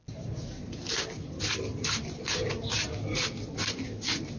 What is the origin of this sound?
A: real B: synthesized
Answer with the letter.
A